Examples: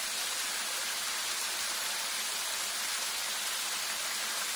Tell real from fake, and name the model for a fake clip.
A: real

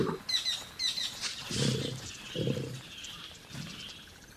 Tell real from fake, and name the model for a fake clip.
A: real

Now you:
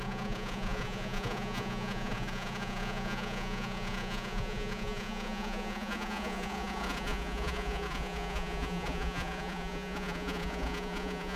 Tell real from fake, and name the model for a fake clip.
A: fake, vocoder, Vocos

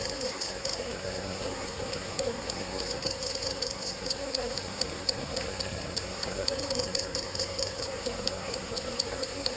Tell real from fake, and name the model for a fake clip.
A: fake, codec, SNAC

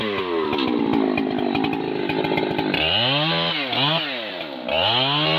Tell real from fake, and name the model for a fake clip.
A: real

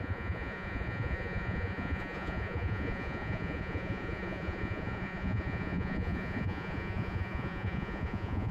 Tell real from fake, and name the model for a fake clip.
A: fake, vocoder, Vocos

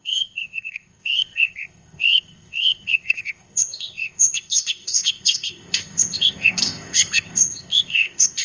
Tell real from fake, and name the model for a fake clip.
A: fake, codec, ZipCodec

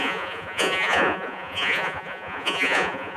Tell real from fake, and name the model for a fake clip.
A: fake, vocoder, Vocos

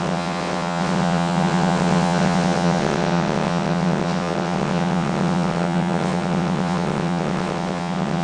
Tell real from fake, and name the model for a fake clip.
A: fake, vocoder, WaveNeXt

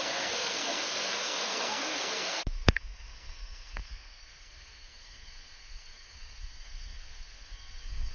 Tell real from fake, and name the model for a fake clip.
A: fake, codec, SNAC